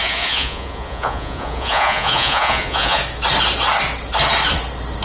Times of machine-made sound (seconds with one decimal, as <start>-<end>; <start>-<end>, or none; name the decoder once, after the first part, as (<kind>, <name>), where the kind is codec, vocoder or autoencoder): 0.0-3.0 (vocoder, Vocos)